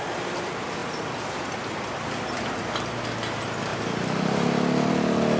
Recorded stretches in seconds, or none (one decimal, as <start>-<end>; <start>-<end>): 0.0-5.4

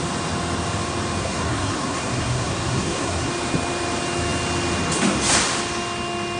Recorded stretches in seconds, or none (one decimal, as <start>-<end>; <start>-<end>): 0.0-1.2; 3.3-6.4